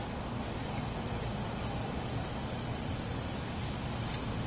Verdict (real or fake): real